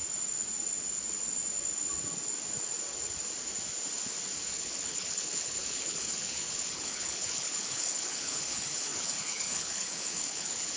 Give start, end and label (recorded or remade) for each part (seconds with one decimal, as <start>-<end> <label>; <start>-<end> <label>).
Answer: 0.0-4.4 recorded; 4.4-10.8 remade